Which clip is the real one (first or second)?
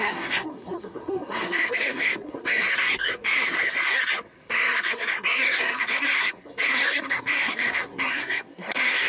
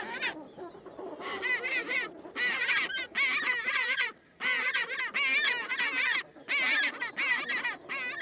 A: second